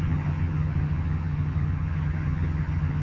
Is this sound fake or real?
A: fake